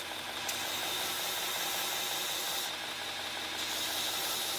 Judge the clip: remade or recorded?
recorded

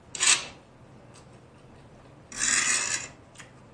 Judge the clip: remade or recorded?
recorded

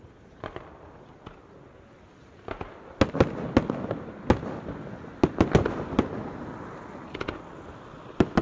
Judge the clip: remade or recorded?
recorded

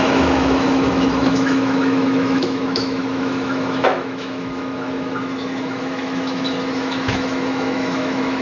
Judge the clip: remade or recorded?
remade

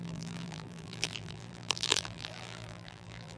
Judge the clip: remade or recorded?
remade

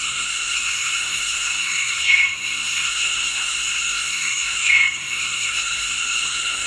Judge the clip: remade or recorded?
remade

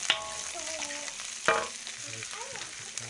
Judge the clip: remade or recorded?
recorded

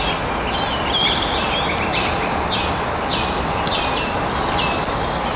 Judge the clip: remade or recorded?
recorded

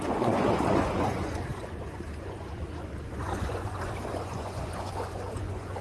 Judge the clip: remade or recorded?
remade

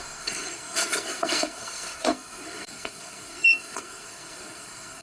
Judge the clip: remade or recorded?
remade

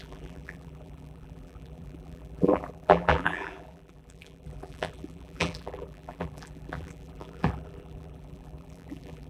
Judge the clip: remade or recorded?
remade